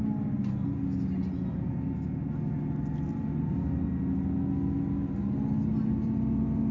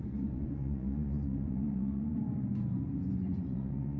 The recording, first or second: first